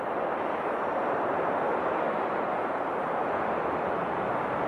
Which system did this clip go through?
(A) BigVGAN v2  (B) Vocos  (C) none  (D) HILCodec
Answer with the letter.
C